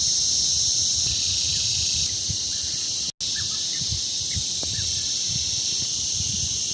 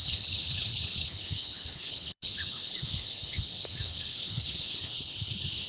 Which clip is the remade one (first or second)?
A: second